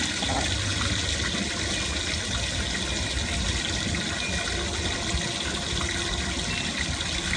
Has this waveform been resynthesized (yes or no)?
no